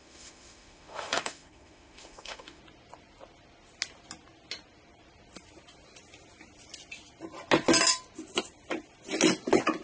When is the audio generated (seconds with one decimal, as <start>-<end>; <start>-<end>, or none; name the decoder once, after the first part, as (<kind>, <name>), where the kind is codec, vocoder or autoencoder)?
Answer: 0.0-2.6 (autoencoder, DAC-VAE)